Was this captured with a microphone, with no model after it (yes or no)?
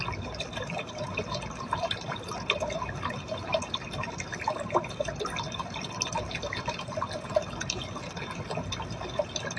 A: yes